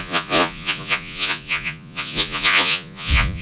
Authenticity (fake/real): fake